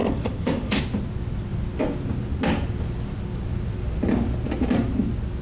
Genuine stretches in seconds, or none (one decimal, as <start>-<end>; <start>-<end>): 0.8-5.4